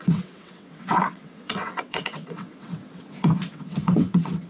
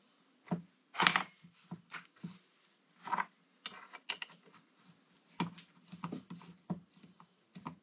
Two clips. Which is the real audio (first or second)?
second